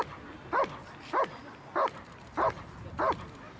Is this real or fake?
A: real